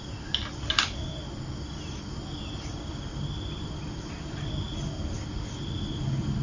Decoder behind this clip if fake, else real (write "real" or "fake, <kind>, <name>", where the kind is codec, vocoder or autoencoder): real